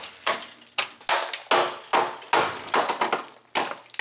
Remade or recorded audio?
recorded